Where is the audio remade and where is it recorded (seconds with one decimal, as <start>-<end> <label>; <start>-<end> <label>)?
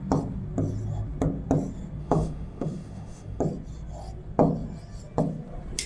0.0-2.0 recorded; 2.0-3.4 remade; 3.4-5.9 recorded